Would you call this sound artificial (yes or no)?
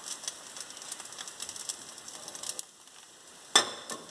no